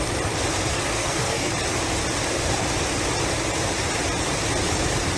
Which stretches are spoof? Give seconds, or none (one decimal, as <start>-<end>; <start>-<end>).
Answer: 0.7-1.5